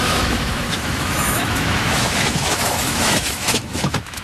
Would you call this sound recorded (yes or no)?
no